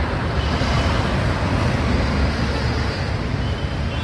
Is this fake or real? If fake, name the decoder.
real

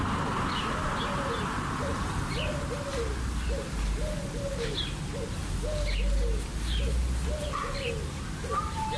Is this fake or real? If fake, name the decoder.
real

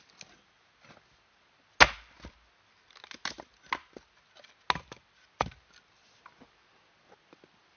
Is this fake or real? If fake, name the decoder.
real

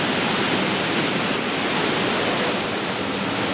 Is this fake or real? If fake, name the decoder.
real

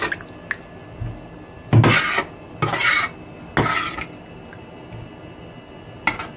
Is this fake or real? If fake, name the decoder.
real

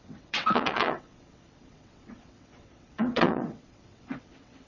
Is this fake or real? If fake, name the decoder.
fake, vocoder, WaveNeXt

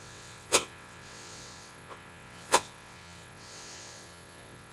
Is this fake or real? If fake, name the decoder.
fake, vocoder, WaveNeXt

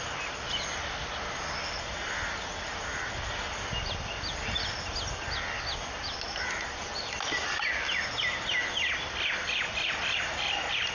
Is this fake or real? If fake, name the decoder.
real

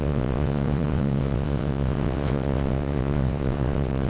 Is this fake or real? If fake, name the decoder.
fake, vocoder, WaveNeXt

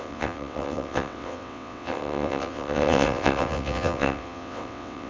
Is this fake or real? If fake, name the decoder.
fake, vocoder, WaveNeXt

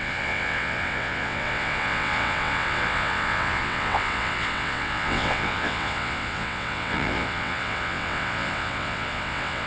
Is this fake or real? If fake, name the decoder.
fake, vocoder, WaveNeXt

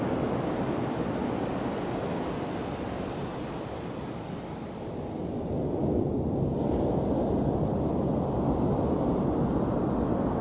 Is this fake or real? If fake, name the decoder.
real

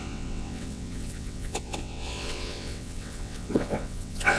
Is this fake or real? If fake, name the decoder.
fake, vocoder, WaveNeXt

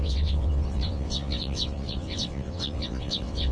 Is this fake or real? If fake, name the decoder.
fake, vocoder, WaveNeXt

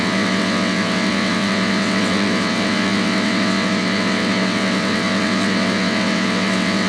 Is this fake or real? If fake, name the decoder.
fake, vocoder, WaveNeXt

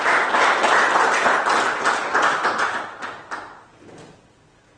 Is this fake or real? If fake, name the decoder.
real